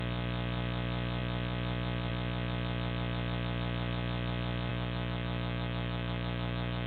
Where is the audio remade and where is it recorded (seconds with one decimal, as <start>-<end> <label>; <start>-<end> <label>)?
0.0-4.7 recorded; 4.7-6.9 remade